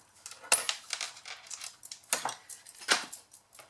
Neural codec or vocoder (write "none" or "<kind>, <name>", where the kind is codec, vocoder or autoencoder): none